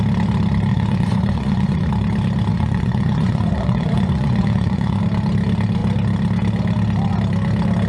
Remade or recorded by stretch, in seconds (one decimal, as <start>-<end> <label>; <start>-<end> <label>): 0.0-0.7 recorded; 0.7-1.9 remade; 1.9-2.5 recorded; 2.5-5.0 remade; 5.0-7.9 recorded